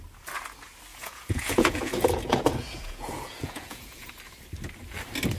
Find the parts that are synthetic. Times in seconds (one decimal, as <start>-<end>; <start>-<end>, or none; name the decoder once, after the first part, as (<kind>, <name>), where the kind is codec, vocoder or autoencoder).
0.9-4.1 (vocoder, Vocos)